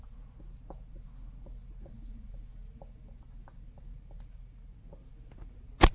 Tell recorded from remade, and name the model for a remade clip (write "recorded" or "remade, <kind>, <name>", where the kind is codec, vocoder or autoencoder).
recorded